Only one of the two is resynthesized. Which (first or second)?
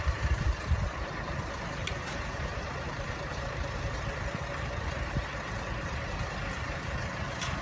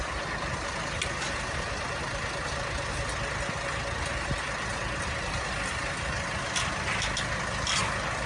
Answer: first